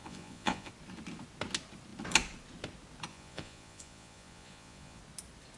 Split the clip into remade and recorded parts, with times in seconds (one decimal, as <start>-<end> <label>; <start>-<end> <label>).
0.0-0.7 remade; 0.7-3.1 recorded; 3.1-5.0 remade; 5.0-5.6 recorded